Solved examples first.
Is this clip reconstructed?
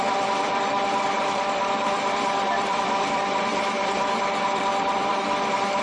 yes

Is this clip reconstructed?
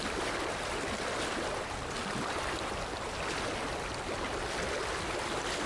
no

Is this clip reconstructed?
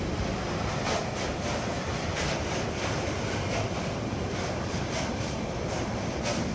yes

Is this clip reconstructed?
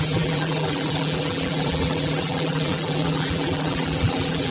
yes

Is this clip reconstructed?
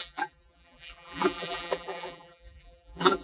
yes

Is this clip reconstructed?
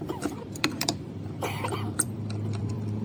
yes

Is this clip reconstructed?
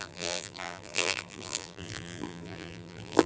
yes